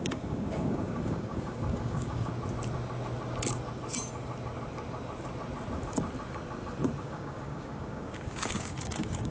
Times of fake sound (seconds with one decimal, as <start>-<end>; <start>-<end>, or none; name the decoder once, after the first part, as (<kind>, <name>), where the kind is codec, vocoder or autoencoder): 0.0-2.3 (codec, DAC); 7.0-9.3